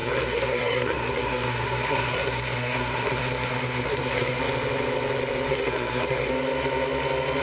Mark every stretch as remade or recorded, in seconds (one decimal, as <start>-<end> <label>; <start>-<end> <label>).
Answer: 0.0-4.4 remade; 4.4-5.5 recorded; 5.5-6.3 remade; 6.3-7.4 recorded